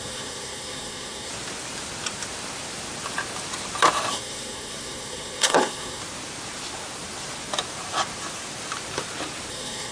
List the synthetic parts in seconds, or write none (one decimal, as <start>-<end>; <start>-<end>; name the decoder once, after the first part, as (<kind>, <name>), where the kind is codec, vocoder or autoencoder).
0.0-1.3 (codec, SNAC); 4.1-6.0; 9.5-9.9